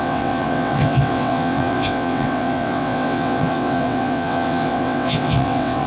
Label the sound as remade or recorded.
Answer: remade